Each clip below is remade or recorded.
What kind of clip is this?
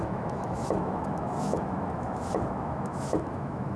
remade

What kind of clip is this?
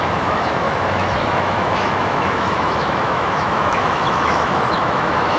remade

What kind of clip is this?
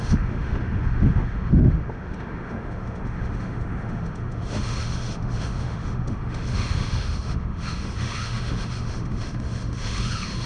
remade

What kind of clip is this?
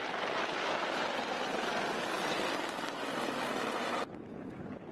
recorded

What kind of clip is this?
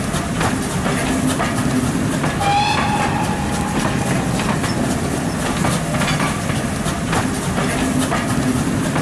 recorded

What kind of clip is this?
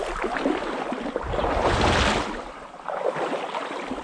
recorded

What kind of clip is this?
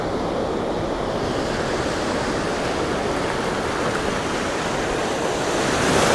recorded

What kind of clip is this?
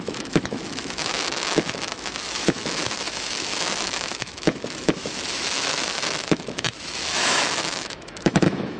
remade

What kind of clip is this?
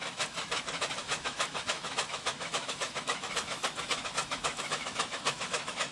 remade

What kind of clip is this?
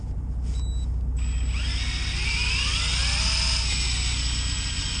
recorded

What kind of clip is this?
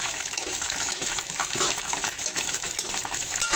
remade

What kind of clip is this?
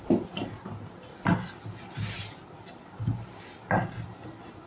recorded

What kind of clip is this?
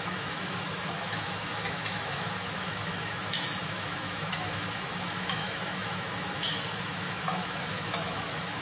remade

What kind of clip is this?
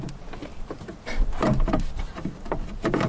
recorded